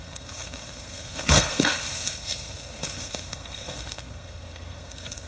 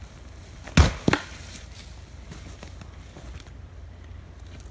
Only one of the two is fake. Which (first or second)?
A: first